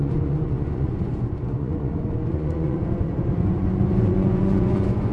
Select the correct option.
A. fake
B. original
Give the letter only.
A